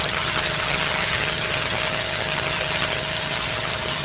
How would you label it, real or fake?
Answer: fake